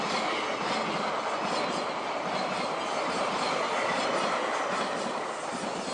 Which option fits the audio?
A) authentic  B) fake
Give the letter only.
A